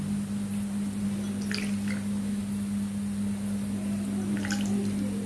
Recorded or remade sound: recorded